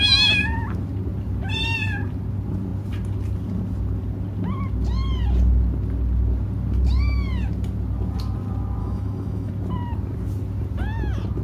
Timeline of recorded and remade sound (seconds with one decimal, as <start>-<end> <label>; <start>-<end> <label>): 0.0-8.8 recorded; 8.8-9.5 remade; 9.5-11.4 recorded